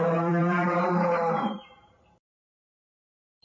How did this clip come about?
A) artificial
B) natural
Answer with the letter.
A